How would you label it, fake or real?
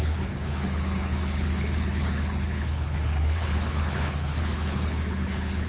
fake